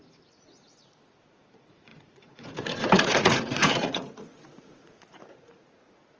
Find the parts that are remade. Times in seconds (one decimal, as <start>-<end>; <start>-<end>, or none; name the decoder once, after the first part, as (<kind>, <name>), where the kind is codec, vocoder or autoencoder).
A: 0.0-6.2 (vocoder, Vocos)